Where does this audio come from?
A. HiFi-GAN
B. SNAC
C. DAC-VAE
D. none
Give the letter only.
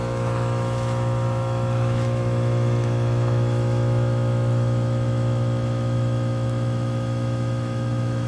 C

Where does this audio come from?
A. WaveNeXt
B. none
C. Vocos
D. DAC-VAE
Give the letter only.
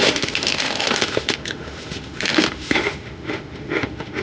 D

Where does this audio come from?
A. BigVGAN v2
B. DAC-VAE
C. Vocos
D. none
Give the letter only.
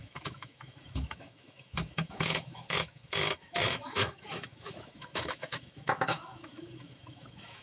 B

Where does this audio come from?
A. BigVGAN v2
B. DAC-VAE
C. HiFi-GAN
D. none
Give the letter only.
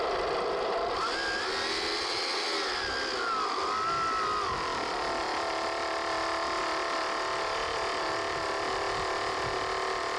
D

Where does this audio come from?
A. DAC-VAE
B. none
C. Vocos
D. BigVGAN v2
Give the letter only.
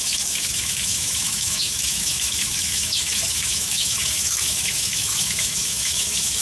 A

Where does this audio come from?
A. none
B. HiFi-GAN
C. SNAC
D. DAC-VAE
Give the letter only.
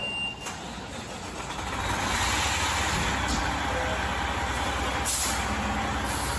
A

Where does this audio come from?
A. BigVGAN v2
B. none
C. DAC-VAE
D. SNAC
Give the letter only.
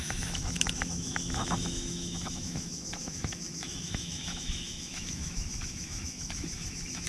C